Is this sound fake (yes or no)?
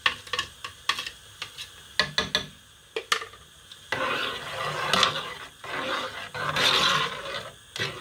no